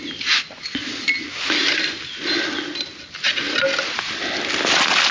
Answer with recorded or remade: recorded